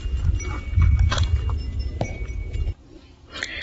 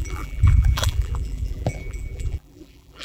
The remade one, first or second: second